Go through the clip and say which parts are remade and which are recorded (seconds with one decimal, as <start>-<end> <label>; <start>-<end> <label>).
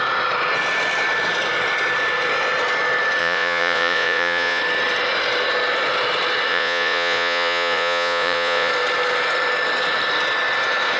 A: 0.0-3.2 recorded; 3.2-4.6 remade; 4.6-6.5 recorded; 6.5-8.7 remade; 8.7-11.0 recorded